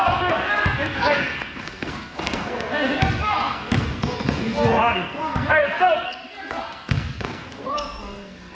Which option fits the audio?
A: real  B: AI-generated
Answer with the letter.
B